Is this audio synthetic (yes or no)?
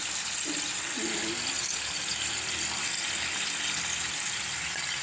no